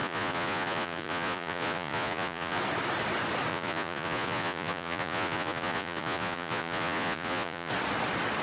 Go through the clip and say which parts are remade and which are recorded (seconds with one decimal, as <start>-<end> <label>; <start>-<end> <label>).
0.0-2.6 remade; 2.6-3.5 recorded; 3.5-7.7 remade; 7.7-8.4 recorded